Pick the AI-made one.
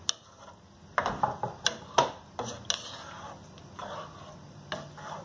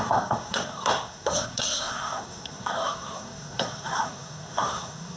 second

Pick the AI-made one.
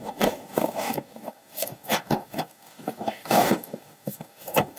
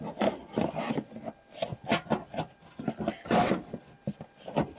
first